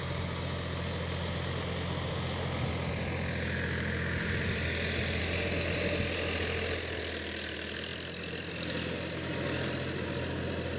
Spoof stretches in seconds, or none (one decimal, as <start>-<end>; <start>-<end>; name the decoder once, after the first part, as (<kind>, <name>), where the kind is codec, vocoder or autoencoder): none